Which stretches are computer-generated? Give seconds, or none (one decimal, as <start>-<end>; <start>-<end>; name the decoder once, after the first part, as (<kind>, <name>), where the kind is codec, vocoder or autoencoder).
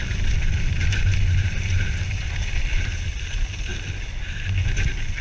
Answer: 0.0-0.5 (vocoder, BigVGAN v2); 2.4-3.1